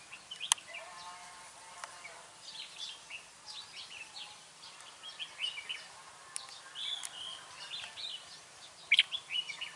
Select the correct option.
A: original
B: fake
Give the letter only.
A